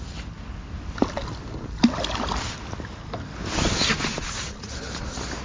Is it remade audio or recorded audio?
recorded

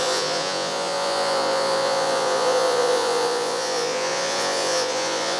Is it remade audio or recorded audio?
remade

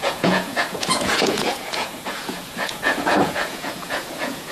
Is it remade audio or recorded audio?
remade